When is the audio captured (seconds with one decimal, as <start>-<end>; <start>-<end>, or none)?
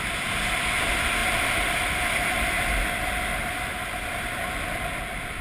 0.0-1.2; 4.4-5.4